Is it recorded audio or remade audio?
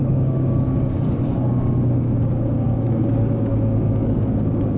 remade